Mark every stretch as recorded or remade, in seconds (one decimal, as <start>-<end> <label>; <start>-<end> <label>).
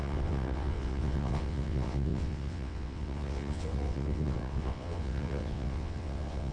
0.0-6.5 remade